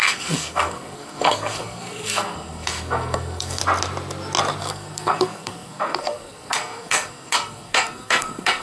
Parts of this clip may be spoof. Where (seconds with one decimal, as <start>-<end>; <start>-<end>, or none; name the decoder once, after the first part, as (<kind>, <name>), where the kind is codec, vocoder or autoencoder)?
0.0-3.6 (codec, SNAC); 4.6-8.6